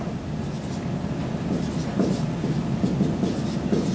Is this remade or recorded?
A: recorded